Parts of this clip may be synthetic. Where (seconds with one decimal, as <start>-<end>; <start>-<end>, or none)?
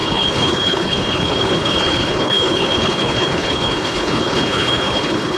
0.0-5.4